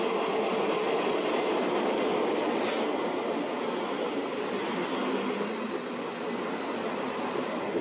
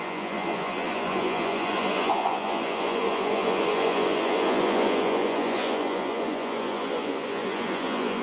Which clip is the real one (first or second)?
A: first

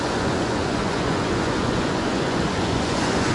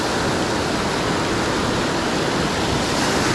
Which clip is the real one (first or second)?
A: second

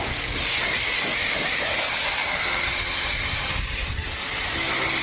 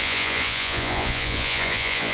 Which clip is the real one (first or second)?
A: first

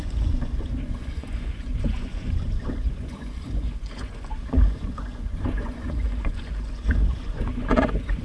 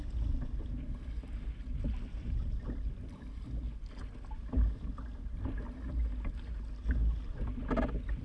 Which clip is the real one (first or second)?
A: second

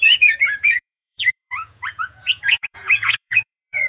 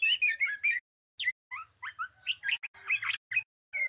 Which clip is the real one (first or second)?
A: second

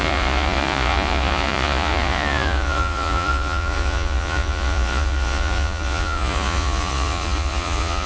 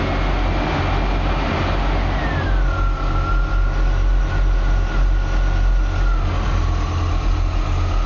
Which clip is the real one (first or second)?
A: second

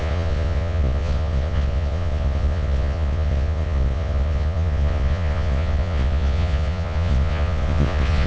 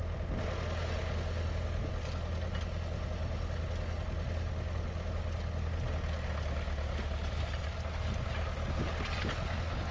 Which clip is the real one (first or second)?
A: second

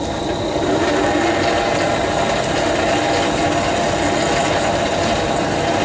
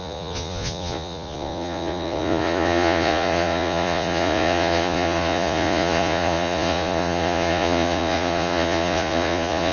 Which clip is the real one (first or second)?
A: first